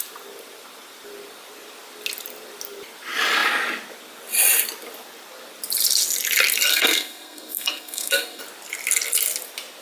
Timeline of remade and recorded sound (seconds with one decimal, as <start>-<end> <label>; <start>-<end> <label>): 0.0-6.7 recorded; 6.7-8.4 remade; 8.4-9.8 recorded